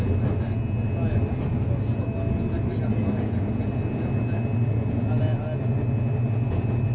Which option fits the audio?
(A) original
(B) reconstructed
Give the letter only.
A